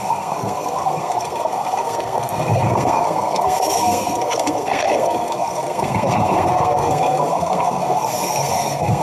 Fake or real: fake